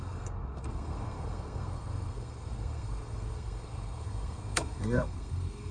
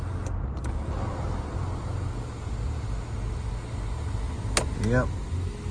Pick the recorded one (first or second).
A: second